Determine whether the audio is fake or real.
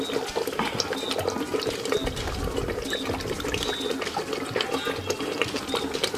real